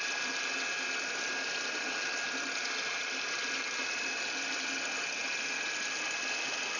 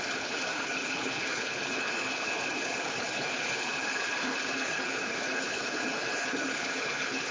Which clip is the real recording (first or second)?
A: first